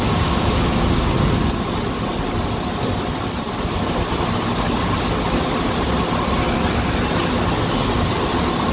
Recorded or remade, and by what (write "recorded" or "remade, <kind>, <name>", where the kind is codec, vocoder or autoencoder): recorded